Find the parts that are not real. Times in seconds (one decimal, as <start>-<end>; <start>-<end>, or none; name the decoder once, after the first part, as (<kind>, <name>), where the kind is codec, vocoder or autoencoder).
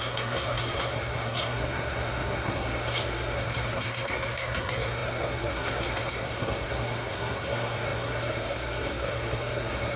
0.0-10.0 (codec, SNAC)